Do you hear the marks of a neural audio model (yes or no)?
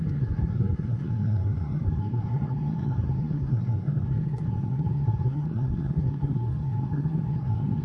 yes